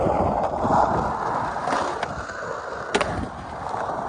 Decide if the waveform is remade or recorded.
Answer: recorded